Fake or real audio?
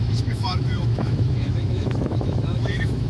fake